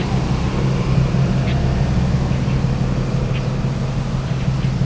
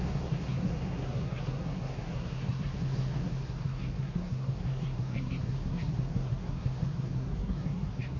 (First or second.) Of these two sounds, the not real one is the second